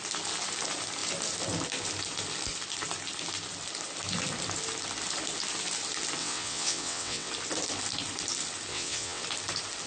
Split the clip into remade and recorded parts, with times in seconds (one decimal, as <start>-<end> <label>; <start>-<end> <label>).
0.0-6.2 recorded; 6.2-7.3 remade; 7.3-8.7 recorded; 8.7-9.2 remade; 9.2-9.9 recorded

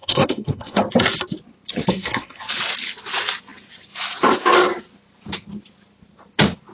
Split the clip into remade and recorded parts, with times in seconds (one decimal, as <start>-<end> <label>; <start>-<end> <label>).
0.0-0.8 remade; 0.8-1.9 recorded; 1.9-2.5 remade; 2.5-6.7 recorded

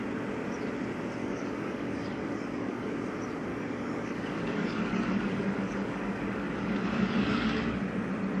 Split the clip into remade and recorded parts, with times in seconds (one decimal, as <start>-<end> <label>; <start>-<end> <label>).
0.0-1.2 recorded; 1.2-2.9 remade; 2.9-3.5 recorded; 3.5-7.8 remade; 7.8-8.4 recorded

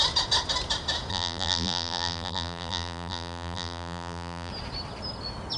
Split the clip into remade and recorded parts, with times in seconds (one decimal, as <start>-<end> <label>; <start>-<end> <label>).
0.0-1.1 recorded; 1.1-4.5 remade; 4.5-5.6 recorded

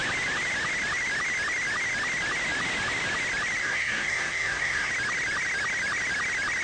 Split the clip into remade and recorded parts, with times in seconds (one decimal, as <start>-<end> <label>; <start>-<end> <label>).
0.0-3.6 recorded; 3.6-4.9 remade; 4.9-6.6 recorded

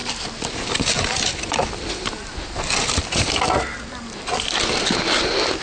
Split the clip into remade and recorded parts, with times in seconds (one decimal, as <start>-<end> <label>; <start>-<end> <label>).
0.0-5.6 recorded

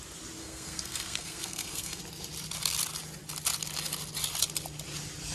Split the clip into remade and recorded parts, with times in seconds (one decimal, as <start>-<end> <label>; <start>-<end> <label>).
0.0-0.4 recorded; 0.4-2.0 remade; 2.0-5.3 recorded